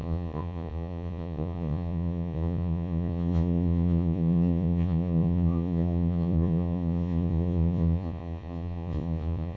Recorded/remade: remade